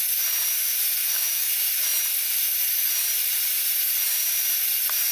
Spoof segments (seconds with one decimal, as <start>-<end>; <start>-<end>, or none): 1.0-1.5